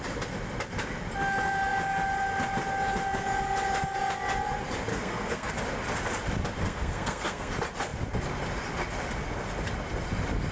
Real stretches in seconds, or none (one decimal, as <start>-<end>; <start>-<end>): 0.0-4.9; 5.5-6.6; 7.5-10.5